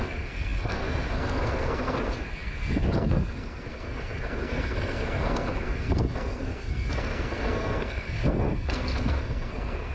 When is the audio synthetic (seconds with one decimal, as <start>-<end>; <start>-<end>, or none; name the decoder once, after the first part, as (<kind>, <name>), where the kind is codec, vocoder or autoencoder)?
0.0-9.9 (codec, SNAC)